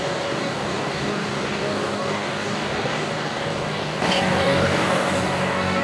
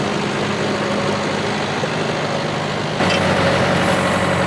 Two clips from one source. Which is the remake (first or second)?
first